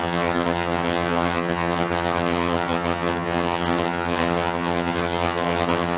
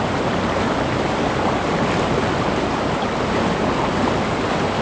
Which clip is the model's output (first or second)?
first